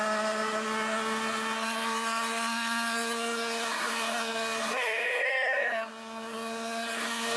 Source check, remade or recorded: remade